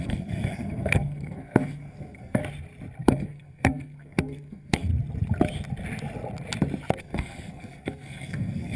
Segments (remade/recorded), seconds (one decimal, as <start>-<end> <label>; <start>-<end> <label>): 0.0-2.4 remade; 2.4-3.0 recorded; 3.0-4.9 remade; 4.9-7.0 recorded; 7.0-8.8 remade

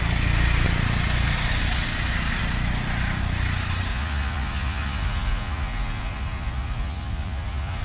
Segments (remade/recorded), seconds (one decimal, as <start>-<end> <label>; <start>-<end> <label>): 0.0-3.9 recorded; 3.9-7.8 remade